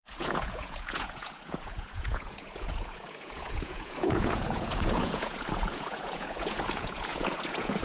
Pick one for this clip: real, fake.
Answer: fake